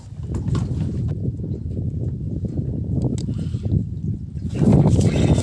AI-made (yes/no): no